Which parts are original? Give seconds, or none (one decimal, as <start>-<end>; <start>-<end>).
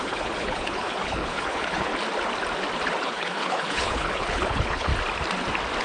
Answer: 1.9-3.0; 4.9-5.8